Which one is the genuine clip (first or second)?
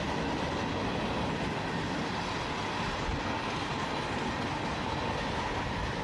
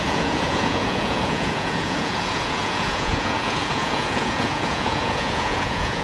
first